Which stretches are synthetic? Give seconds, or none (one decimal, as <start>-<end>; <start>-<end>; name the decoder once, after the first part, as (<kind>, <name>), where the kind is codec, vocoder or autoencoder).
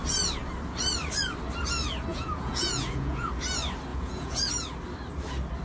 2.1-3.3 (vocoder, Vocos); 3.9-4.5